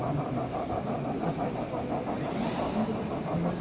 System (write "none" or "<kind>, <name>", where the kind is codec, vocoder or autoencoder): none